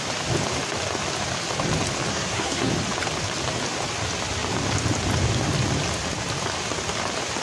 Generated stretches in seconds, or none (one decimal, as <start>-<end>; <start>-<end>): 2.1-2.7